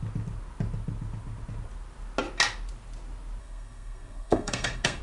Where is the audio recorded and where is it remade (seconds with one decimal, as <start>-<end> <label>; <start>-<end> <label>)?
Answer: 0.0-3.4 recorded; 3.4-5.0 remade